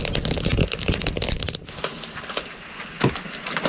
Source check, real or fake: real